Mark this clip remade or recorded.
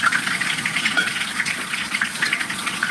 remade